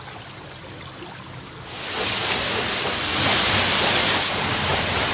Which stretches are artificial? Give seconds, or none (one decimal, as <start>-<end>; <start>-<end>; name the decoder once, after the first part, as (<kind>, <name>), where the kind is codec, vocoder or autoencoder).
3.3-5.1 (vocoder, BigVGAN v2)